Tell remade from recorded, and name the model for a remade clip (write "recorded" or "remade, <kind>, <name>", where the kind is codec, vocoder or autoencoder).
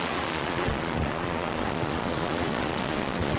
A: remade, vocoder, Vocos